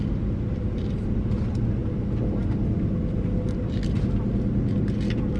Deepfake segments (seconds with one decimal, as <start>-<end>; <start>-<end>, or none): none